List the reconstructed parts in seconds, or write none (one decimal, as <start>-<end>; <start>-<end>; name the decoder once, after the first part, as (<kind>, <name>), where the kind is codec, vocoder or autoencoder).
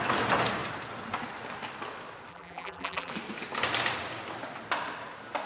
2.3-3.1 (vocoder, BigVGAN v2)